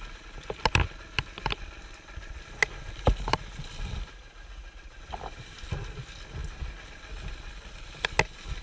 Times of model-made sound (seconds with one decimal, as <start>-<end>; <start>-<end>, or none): 4.1-5.0